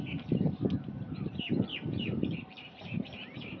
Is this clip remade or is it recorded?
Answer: remade